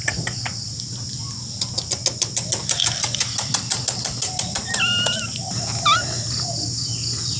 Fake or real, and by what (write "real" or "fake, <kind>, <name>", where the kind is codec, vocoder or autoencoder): real